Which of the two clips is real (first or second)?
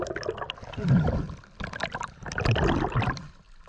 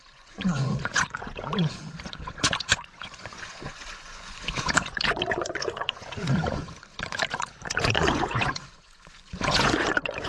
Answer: first